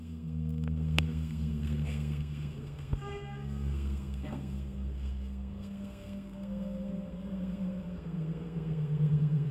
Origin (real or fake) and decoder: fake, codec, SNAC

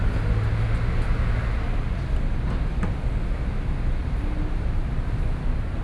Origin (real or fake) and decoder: real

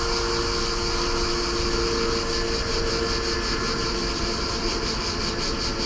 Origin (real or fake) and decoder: real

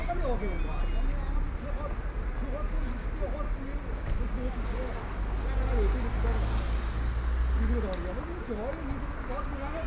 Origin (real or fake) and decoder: real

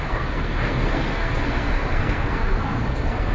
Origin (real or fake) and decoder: fake, codec, SNAC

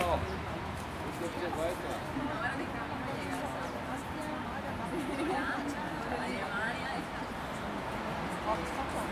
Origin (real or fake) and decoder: real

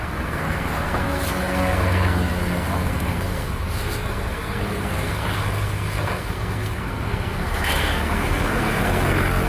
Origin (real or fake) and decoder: fake, codec, SNAC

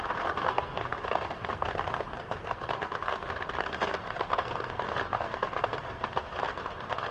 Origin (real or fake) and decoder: fake, codec, SNAC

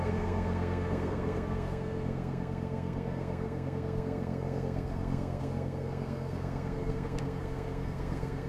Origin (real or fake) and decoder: fake, codec, SNAC